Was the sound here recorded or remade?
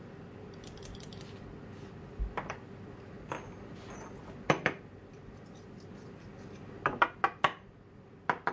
recorded